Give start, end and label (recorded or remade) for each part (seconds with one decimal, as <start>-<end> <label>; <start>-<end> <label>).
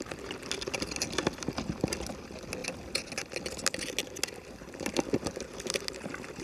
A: 0.0-6.4 recorded